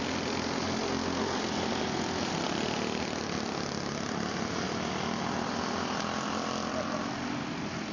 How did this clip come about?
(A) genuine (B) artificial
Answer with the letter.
A